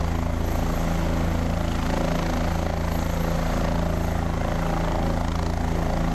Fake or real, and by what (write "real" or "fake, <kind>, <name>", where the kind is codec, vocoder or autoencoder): real